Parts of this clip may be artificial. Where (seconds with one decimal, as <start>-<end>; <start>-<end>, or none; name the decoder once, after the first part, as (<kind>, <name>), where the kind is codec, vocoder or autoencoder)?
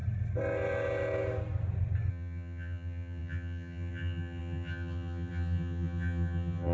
2.1-6.7 (vocoder, HiFi-GAN)